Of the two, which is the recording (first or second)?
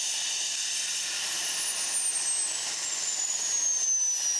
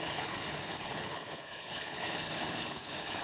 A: first